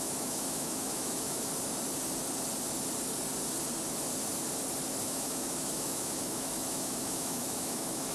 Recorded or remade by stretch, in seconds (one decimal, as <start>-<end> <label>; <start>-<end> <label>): 0.0-1.5 remade; 1.5-5.0 recorded; 5.0-8.1 remade